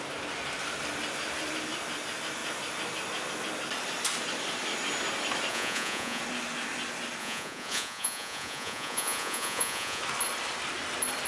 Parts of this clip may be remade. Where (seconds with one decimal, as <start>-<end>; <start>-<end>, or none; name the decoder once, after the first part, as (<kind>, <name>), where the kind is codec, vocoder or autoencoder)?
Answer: 5.5-6.2 (vocoder, Vocos); 7.2-10.0